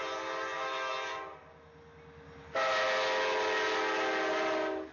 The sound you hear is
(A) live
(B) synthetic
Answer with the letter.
A